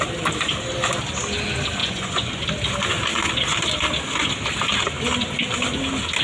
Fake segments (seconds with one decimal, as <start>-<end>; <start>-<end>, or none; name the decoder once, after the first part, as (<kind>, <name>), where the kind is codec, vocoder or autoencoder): 1.8-2.4 (vocoder, Vocos)